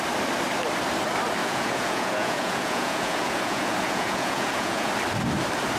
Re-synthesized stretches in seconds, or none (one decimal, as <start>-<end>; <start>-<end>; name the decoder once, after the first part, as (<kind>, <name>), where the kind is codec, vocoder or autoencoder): 1.4-4.9 (vocoder, Vocos)